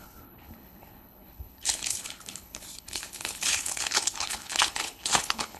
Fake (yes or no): yes